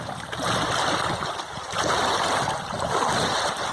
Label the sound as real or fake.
real